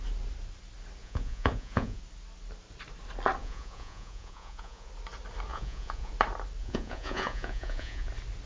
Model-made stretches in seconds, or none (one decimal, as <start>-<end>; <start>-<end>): 1.0-2.0; 3.4-4.9; 5.5-6.1; 6.6-8.1